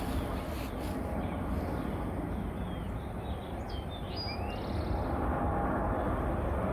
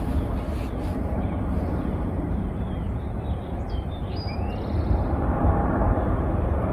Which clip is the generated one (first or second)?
second